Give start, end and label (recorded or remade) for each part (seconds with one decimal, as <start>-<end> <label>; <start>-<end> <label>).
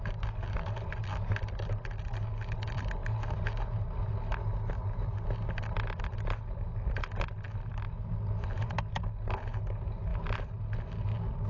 0.0-11.5 recorded